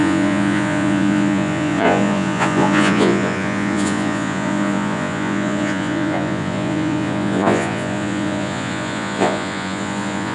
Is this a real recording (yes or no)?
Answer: no